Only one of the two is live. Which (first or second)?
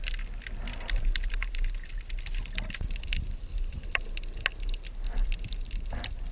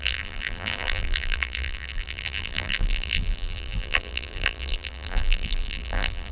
first